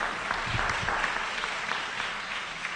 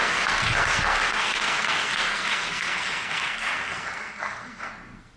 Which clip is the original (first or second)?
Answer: first